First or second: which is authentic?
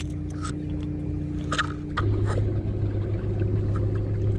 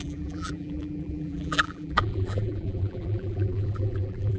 first